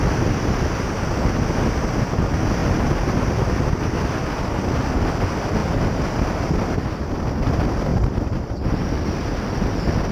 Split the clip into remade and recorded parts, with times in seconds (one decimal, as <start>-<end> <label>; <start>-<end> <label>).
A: 0.0-7.9 recorded; 7.9-8.7 remade; 8.7-10.1 recorded